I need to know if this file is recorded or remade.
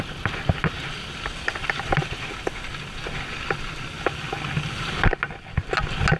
recorded